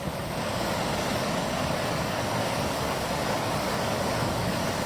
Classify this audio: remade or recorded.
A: remade